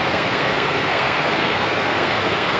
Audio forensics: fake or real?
fake